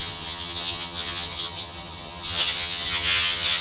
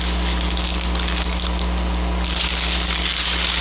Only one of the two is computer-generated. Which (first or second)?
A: first